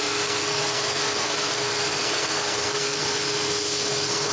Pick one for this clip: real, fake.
fake